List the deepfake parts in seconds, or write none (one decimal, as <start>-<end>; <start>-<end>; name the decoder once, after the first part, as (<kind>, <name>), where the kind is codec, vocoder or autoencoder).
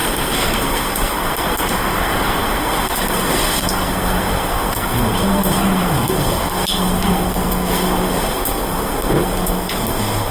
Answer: 0.0-10.3 (codec, SNAC)